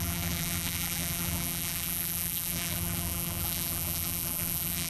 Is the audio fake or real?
fake